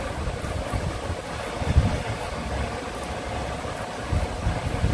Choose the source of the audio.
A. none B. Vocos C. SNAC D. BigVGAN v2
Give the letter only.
A